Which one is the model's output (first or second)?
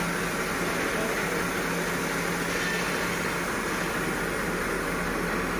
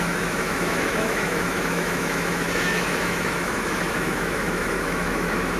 second